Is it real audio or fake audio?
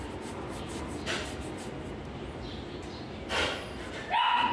real